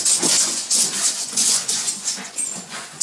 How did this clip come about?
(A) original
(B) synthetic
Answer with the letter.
B